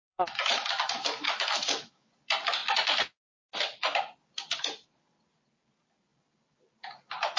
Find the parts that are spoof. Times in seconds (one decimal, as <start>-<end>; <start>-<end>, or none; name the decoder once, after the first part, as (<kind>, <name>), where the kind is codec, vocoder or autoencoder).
0.0-2.1 (autoencoder, DAC-VAE)